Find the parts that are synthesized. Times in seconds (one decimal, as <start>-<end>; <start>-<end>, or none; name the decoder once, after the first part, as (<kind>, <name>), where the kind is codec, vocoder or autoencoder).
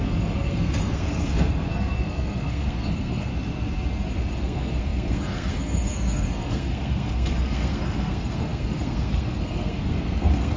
0.0-3.3 (codec, SNAC); 4.1-10.6